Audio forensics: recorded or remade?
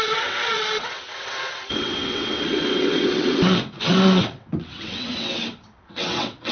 remade